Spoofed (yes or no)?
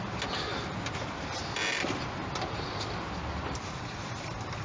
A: no